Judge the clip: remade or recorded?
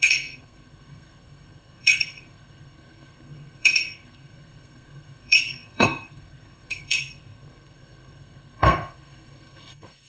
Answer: remade